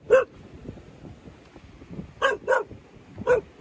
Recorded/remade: recorded